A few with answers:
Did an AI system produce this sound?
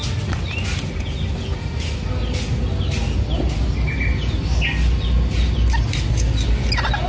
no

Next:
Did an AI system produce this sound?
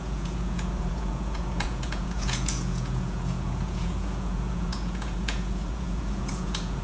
yes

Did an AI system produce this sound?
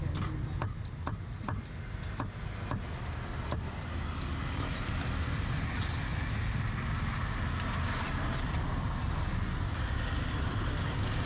no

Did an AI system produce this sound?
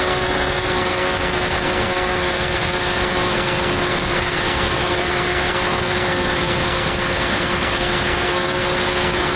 yes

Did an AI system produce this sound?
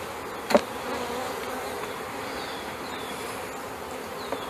no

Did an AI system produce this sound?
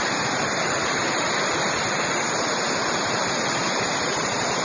no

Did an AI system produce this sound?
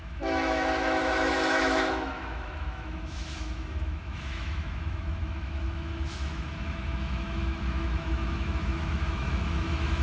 yes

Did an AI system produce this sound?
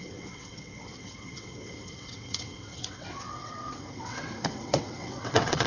yes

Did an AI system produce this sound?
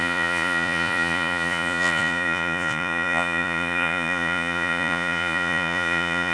yes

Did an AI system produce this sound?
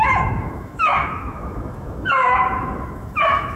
yes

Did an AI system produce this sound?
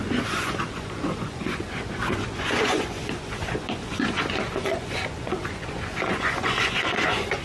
yes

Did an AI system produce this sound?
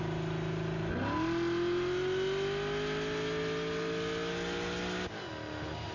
no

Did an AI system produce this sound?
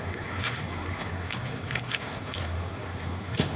yes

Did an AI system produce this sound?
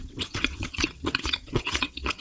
yes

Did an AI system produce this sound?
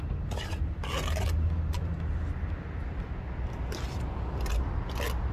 no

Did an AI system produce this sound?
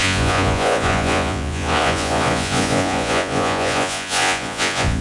yes